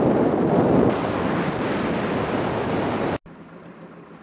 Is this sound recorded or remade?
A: recorded